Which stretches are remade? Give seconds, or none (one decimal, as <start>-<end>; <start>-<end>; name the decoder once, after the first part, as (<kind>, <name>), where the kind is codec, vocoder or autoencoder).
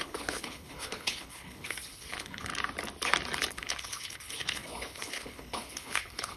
0.0-2.5 (codec, HILCodec); 3.5-6.4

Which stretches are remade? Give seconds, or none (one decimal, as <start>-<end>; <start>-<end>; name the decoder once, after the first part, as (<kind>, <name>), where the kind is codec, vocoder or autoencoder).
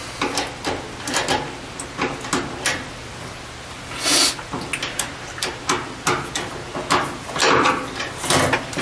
none